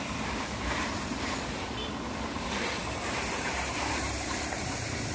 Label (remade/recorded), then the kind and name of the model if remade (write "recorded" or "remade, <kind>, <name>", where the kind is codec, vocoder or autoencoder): remade, vocoder, BigVGAN v2